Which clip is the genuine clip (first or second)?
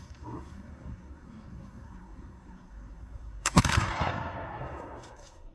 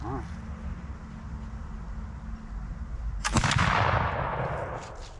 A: second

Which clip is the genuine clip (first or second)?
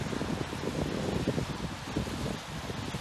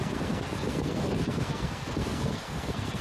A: first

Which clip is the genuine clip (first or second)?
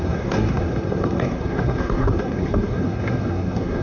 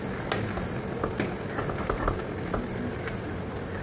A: second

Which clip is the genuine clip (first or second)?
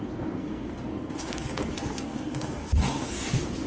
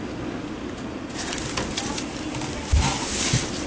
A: second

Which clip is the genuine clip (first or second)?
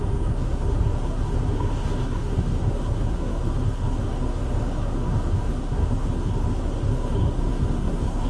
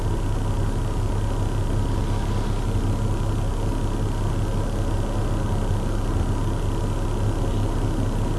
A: second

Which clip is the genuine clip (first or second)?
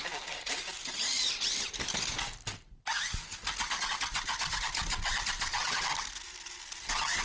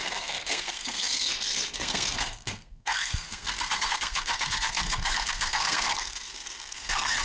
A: first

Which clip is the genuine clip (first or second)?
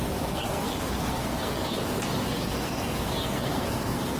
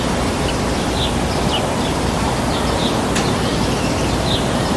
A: second